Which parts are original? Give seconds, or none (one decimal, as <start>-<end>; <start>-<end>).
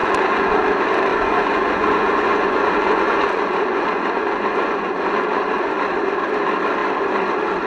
0.6-1.1; 5.7-7.7